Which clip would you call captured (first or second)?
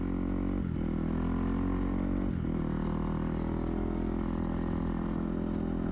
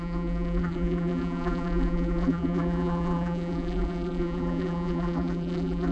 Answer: first